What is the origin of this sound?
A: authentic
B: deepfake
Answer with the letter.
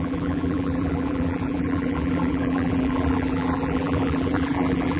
B